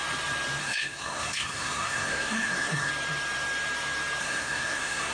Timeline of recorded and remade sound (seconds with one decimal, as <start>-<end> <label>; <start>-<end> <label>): 0.0-0.6 recorded; 0.6-2.9 remade; 2.9-4.2 recorded; 4.2-5.1 remade